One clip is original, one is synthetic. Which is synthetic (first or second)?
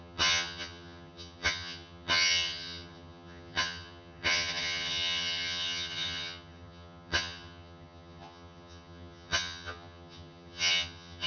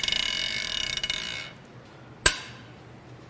first